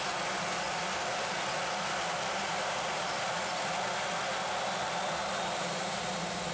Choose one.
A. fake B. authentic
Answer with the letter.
B